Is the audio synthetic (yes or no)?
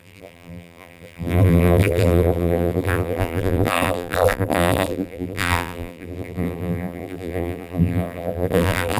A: yes